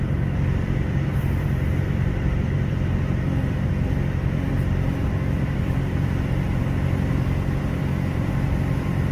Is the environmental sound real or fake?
fake